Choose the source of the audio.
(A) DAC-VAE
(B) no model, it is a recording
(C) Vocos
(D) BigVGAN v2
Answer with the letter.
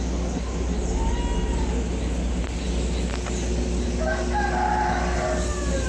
B